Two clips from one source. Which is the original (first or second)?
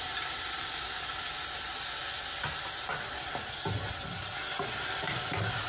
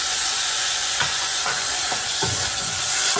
first